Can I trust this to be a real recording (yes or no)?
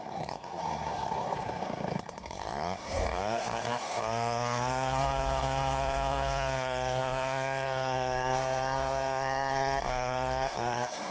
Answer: no